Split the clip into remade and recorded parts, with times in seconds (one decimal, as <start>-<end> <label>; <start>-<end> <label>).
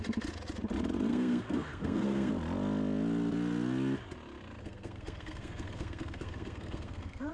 0.0-1.1 recorded; 1.1-2.3 remade; 2.3-4.6 recorded; 4.6-7.3 remade